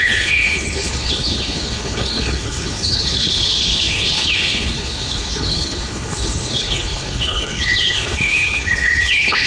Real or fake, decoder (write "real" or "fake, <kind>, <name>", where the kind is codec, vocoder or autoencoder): fake, codec, HILCodec